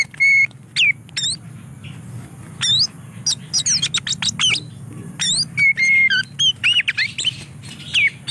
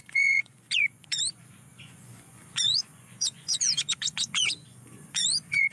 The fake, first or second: second